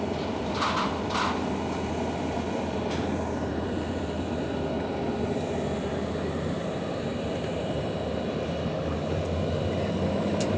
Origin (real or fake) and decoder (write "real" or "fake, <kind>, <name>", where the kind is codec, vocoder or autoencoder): fake, vocoder, BigVGAN v2